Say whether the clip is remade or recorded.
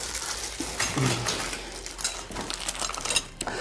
recorded